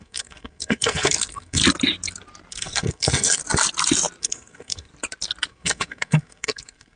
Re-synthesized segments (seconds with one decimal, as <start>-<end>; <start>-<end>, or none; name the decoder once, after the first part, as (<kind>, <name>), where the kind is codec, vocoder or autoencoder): 0.0-1.6 (codec, SNAC); 2.5-3.4; 4.2-4.9; 5.5-7.0